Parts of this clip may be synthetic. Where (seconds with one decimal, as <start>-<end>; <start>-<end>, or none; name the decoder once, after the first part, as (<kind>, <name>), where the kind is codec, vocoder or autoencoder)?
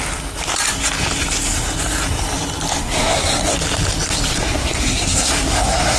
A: 2.8-3.4 (codec, SNAC); 4.3-6.0